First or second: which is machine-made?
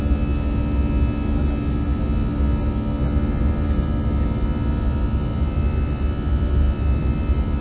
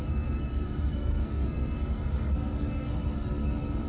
second